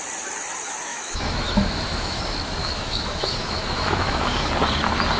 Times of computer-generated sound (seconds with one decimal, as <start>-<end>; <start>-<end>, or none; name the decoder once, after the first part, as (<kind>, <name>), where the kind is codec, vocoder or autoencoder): 0.9-2.2 (autoencoder, DAC-VAE); 2.6-4.5